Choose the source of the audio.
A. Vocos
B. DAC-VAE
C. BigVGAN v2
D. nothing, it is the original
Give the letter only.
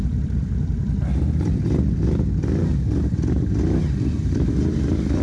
D